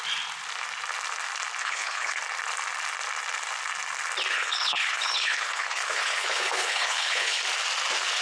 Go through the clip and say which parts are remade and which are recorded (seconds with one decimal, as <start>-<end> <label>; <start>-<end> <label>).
0.0-1.6 recorded; 1.6-2.2 remade; 2.2-4.3 recorded; 4.3-7.4 remade; 7.4-8.2 recorded